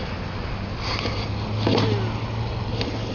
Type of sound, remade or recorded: recorded